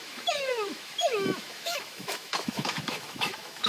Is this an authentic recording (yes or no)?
no